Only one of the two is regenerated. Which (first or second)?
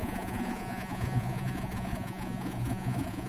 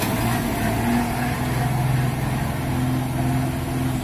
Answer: first